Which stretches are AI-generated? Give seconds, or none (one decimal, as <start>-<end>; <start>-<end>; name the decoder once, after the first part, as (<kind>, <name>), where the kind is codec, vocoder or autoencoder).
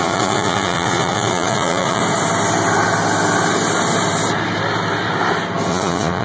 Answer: 0.0-2.0 (vocoder, Vocos); 5.7-6.2